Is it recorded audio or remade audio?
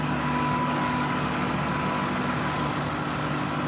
remade